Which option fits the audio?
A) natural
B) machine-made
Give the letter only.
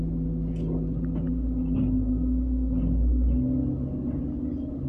A